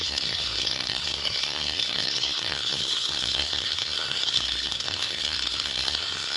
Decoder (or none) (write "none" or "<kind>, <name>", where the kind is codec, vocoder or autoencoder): codec, SNAC